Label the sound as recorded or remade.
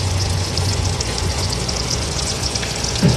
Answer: remade